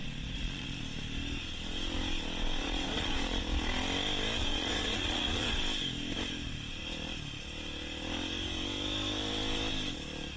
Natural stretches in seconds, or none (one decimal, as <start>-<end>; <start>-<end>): 0.8-2.6; 3.4-4.4; 5.6-10.4